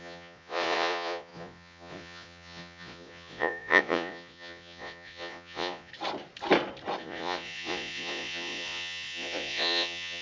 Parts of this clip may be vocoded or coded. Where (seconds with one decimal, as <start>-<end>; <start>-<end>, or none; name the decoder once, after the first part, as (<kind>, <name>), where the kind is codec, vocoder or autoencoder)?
0.0-5.9 (vocoder, Vocos); 7.0-10.2